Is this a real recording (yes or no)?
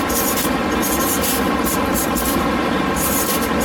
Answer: yes